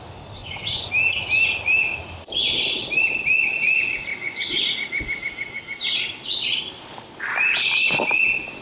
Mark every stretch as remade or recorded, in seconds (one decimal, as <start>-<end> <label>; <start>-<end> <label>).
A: 0.0-0.4 recorded; 0.4-0.9 remade; 0.9-4.1 recorded; 4.1-4.7 remade; 4.7-8.6 recorded